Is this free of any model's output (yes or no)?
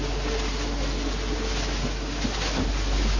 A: yes